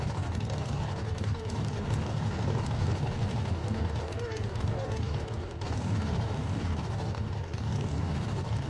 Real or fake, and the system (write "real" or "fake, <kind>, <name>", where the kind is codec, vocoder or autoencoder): fake, codec, DAC